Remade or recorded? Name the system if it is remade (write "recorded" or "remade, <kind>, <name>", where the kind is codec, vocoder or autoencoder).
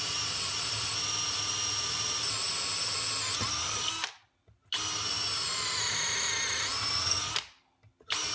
recorded